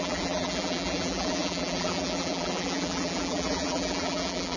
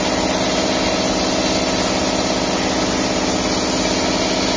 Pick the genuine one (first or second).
second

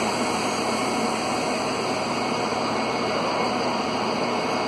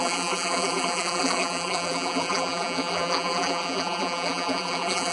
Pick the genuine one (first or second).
first